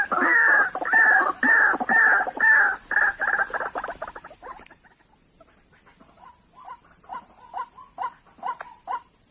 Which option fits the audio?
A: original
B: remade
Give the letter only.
A